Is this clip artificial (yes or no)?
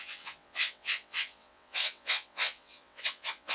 yes